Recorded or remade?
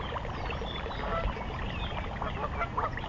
recorded